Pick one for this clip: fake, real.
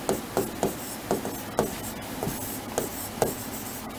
real